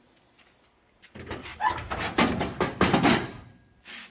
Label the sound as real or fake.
real